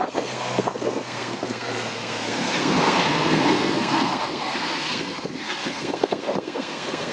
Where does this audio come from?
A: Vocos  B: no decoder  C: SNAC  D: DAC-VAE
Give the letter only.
C